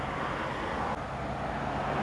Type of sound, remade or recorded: recorded